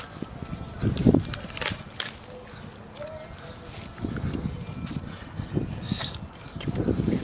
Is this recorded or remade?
recorded